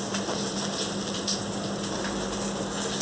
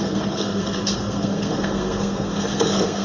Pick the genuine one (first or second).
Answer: first